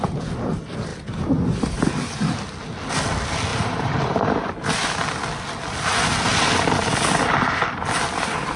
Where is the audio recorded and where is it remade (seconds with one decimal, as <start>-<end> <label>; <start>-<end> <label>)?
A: 0.0-3.5 recorded; 3.5-4.5 remade; 4.5-8.6 recorded